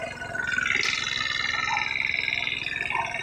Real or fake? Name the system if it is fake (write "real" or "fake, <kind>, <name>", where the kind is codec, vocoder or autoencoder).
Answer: real